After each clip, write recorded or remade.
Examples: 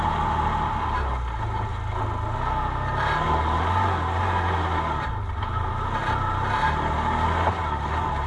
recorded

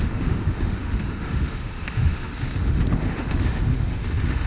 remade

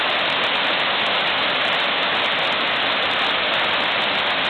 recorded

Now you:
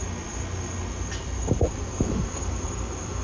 recorded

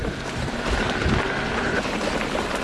recorded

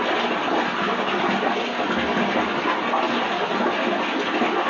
recorded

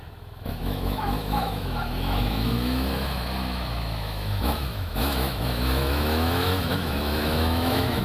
remade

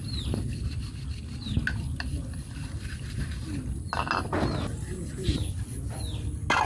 recorded